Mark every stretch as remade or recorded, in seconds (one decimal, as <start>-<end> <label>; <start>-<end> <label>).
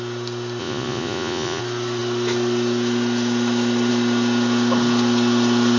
0.0-0.6 recorded; 0.6-1.6 remade; 1.6-5.8 recorded